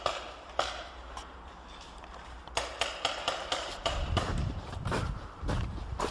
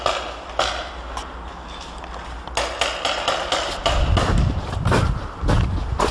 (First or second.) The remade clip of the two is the first